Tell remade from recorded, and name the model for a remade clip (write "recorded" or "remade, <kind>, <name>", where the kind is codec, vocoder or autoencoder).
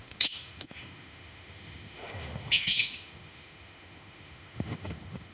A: remade, autoencoder, DAC-VAE